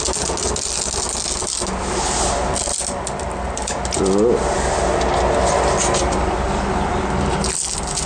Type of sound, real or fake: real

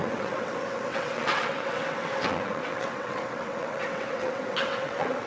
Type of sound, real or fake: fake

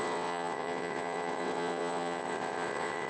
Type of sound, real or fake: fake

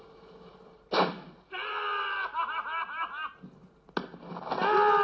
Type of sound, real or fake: real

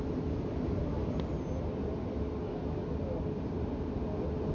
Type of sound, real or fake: real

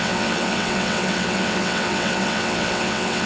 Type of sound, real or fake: fake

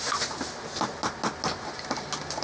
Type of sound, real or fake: real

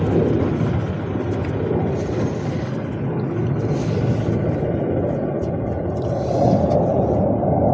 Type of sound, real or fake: real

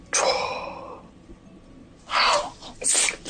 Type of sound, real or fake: real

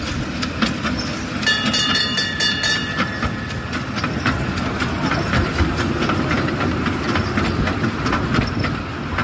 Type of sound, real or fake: real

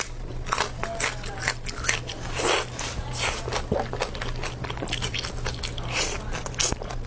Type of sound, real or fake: real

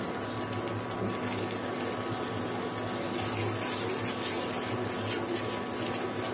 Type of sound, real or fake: real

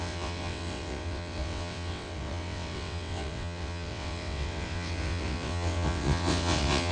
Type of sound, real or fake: fake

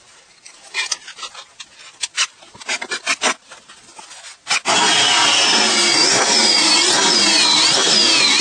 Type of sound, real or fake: real